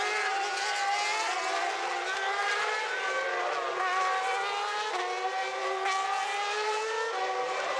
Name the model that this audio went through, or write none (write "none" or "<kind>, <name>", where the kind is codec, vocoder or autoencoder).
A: none